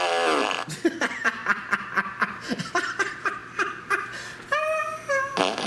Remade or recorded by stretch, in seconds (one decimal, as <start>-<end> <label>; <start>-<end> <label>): 0.0-5.7 recorded